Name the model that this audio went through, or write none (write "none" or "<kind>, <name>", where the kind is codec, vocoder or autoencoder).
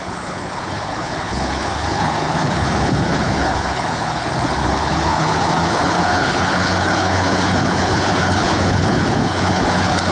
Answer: codec, HILCodec